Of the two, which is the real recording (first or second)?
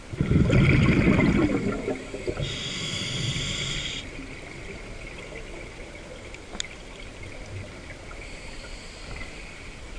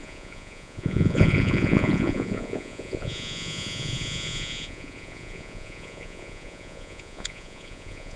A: first